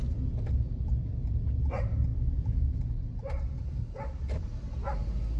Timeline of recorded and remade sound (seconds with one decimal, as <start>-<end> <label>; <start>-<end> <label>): 0.0-2.1 recorded; 2.1-2.8 remade; 2.8-5.4 recorded